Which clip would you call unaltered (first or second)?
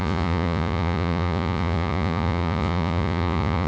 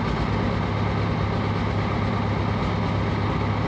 second